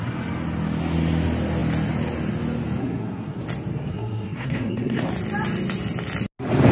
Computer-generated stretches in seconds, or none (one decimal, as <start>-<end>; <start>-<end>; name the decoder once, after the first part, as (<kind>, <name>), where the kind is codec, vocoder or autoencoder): 2.8-3.4 (codec, SNAC); 3.9-5.1